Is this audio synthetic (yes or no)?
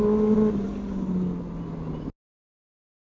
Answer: no